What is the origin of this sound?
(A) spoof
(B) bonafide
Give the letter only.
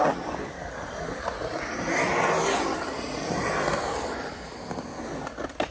B